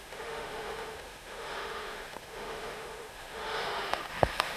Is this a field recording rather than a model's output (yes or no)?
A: no